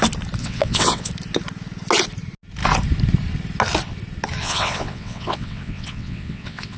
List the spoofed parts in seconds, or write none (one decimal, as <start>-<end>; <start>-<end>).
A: 0.4-1.1; 4.4-6.8